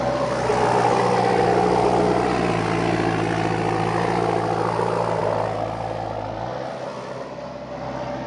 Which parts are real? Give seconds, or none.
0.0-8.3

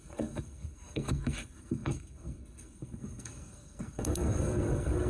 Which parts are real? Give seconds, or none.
none

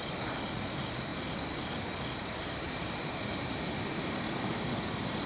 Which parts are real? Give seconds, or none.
0.0-5.3

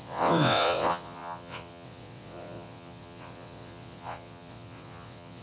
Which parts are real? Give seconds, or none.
none

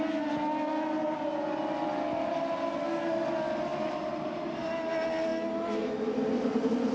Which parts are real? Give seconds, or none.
0.0-6.9

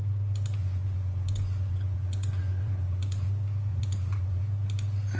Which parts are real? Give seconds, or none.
0.0-0.6; 3.3-3.7; 4.4-5.2

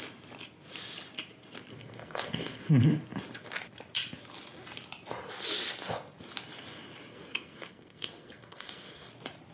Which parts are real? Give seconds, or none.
0.0-1.7; 2.7-7.1; 9.1-9.5